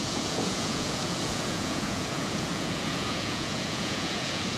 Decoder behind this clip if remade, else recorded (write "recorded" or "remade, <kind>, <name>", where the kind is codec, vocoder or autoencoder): remade, vocoder, Vocos